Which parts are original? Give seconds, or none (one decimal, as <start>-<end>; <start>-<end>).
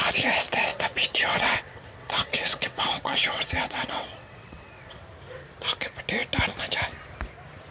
0.0-0.7; 5.0-7.7